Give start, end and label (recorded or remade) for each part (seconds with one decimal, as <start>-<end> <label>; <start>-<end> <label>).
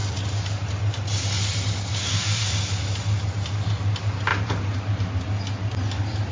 0.0-2.0 recorded; 2.0-2.5 remade; 2.5-6.3 recorded